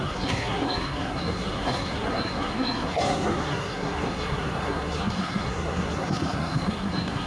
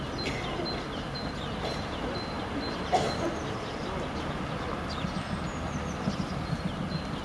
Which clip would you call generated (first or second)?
first